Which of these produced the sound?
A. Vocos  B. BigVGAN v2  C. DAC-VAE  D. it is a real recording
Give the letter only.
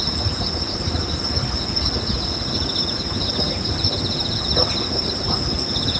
D